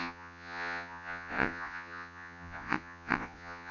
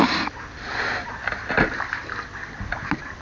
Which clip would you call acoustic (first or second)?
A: second